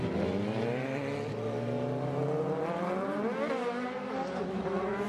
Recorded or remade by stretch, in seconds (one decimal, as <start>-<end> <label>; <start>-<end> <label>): 0.0-5.1 recorded